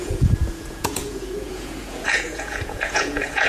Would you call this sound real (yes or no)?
no